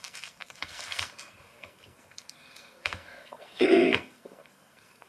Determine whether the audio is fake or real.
fake